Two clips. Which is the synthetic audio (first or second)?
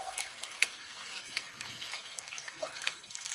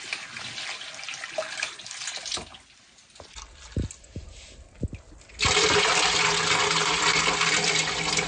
first